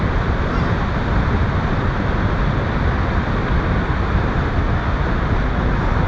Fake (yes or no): no